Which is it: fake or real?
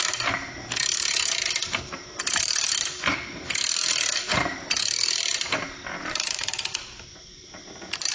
fake